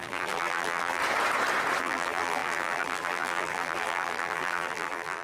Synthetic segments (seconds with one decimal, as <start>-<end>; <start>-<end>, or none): 0.0-1.0; 1.8-5.2